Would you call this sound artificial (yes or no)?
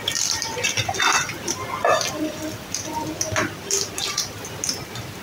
no